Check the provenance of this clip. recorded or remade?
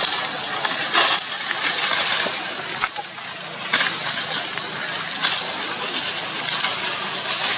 recorded